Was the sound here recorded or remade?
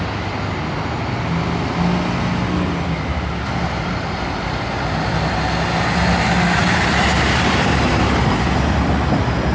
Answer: recorded